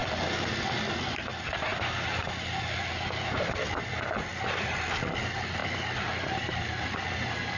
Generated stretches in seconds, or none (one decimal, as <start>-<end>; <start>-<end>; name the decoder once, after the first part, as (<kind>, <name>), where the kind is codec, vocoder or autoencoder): 0.0-0.5 (vocoder, BigVGAN v2); 4.3-5.1; 5.6-7.6